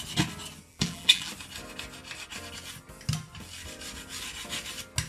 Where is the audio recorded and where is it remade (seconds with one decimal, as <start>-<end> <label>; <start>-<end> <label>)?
0.0-0.7 recorded; 0.7-1.3 remade; 1.3-5.1 recorded